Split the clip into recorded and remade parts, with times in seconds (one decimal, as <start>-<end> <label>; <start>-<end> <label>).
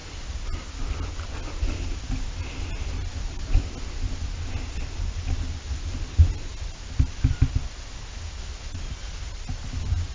0.0-10.1 recorded